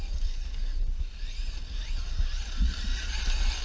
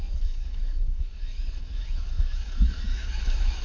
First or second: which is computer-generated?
second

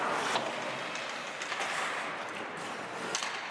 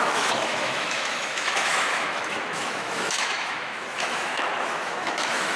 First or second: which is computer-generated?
second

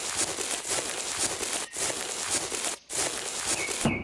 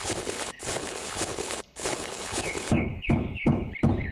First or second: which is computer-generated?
second